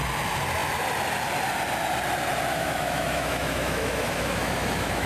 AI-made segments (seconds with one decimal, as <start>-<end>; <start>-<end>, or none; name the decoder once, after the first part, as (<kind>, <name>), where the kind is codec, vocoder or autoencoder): 2.5-5.1 (autoencoder, DAC-VAE)